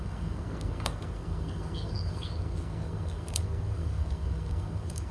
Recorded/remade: remade